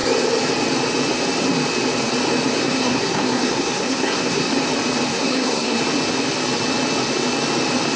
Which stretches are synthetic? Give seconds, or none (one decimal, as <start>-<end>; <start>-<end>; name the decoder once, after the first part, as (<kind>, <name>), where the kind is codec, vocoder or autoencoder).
2.6-4.5 (codec, SNAC); 5.1-5.8

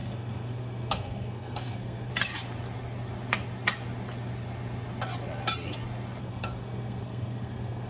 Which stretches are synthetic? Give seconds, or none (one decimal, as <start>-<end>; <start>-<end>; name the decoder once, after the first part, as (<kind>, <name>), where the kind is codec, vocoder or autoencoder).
0.0-2.1 (codec, SNAC); 6.2-7.9